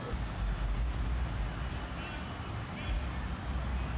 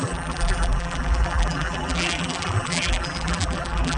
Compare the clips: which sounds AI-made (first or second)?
second